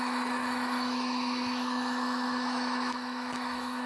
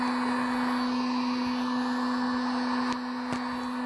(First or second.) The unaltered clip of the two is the second